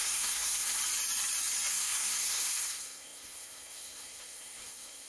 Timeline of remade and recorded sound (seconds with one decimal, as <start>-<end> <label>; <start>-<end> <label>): 0.0-0.8 remade; 0.8-1.7 recorded; 1.7-5.1 remade